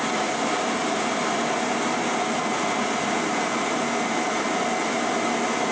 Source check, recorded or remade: recorded